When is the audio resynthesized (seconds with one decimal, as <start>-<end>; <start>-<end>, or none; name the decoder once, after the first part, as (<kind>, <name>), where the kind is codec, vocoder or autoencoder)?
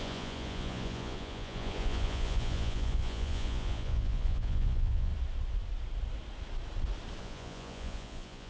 0.0-5.1 (vocoder, Vocos); 7.2-8.5